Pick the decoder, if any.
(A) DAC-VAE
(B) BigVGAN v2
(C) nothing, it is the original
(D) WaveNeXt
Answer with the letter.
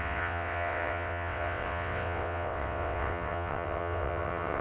D